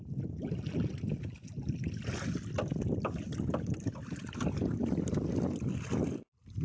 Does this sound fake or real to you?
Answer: real